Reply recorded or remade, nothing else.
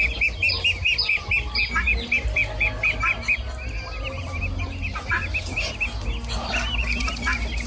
recorded